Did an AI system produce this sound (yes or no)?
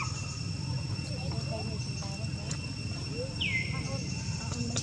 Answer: no